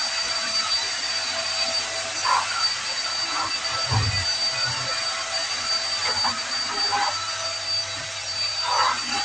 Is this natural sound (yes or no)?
yes